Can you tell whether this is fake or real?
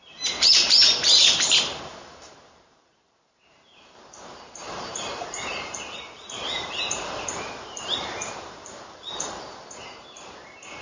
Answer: fake